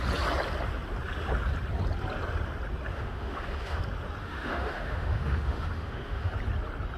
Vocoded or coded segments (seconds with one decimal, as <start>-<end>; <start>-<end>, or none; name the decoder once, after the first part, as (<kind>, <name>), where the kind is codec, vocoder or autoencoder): 2.9-3.8 (autoencoder, DAC-VAE); 4.2-6.3